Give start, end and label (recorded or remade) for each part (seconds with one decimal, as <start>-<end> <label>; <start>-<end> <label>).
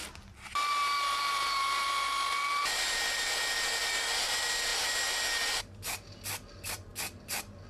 0.0-7.7 recorded